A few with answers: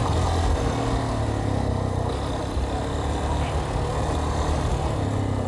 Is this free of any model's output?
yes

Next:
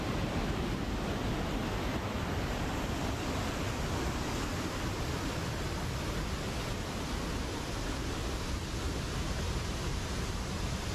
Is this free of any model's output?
yes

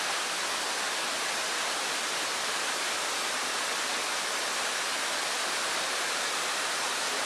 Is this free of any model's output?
yes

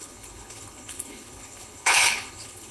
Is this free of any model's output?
no